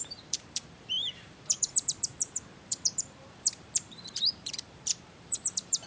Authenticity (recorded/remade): remade